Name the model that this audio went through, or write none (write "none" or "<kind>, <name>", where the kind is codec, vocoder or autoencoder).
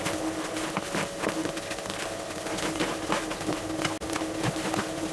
none